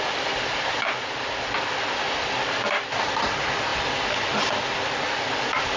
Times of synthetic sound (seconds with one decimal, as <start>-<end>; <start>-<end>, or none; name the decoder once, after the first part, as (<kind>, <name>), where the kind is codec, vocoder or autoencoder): none